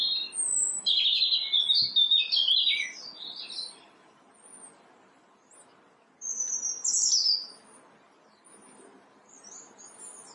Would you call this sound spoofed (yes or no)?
no